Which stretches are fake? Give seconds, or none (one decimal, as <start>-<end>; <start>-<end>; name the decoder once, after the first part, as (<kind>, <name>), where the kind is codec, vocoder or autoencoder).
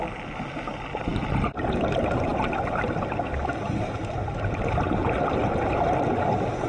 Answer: none